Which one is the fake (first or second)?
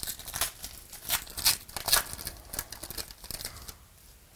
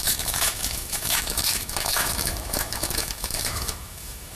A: second